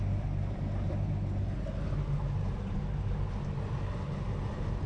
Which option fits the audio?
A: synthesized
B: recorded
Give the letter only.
B